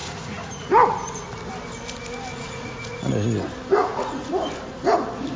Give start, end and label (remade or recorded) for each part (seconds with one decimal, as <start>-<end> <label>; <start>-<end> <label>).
0.0-0.7 remade; 0.7-2.3 recorded; 2.3-3.1 remade; 3.1-3.8 recorded; 3.8-4.3 remade; 4.3-5.4 recorded